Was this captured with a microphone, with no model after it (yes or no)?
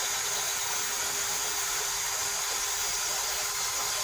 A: yes